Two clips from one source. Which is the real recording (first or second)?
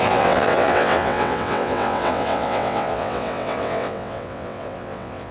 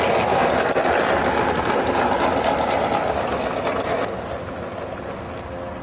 second